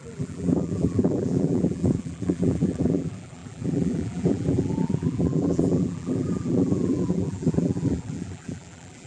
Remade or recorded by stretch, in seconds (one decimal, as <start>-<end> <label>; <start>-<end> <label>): 0.0-9.1 remade